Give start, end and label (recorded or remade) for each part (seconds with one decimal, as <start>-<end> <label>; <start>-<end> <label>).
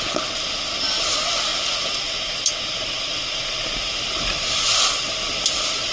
0.0-5.9 recorded